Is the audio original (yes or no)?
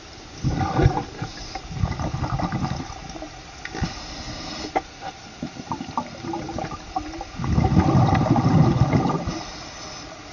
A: yes